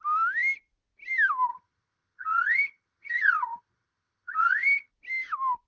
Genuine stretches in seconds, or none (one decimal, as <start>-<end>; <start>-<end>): 0.0-1.5; 4.9-5.7